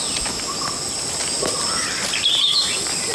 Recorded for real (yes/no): yes